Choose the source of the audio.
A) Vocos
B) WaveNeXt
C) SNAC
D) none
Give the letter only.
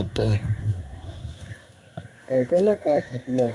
C